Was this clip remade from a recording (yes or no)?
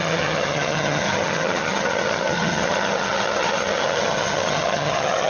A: yes